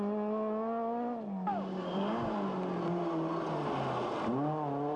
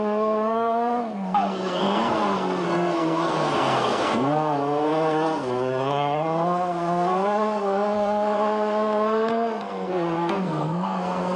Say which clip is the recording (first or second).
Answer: first